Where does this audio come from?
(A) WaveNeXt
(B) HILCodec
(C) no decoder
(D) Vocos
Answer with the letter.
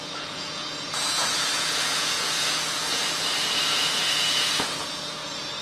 D